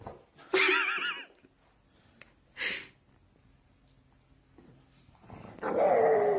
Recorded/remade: recorded